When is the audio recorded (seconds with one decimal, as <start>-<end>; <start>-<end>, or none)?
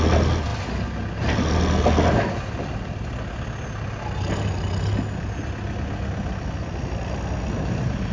0.0-8.1